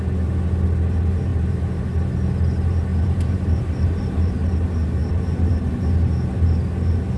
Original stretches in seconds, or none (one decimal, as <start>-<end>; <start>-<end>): 0.0-1.3; 1.8-2.9; 4.3-5.0; 5.7-7.2